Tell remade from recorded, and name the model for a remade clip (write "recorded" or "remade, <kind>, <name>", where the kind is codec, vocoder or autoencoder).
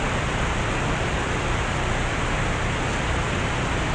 recorded